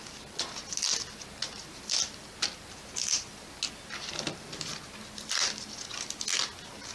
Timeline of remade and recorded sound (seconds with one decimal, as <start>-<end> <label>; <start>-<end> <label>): 0.0-6.9 recorded